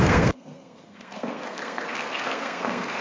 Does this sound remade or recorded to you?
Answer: remade